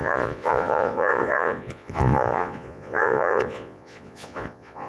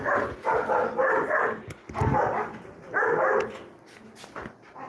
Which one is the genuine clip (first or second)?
second